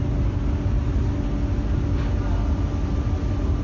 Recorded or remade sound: recorded